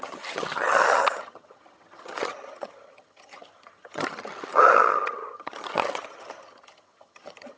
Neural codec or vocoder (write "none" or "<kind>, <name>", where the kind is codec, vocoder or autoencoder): vocoder, HiFi-GAN